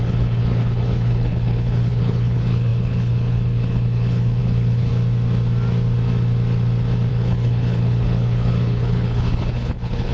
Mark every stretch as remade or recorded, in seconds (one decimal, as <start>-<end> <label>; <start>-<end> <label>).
0.0-4.9 remade; 4.9-7.1 recorded; 7.1-10.1 remade